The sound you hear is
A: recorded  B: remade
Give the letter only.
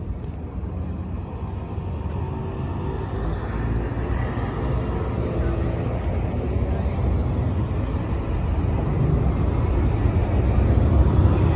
A